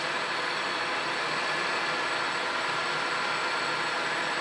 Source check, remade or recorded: recorded